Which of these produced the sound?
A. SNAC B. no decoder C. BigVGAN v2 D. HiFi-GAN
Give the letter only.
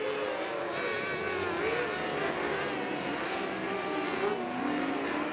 B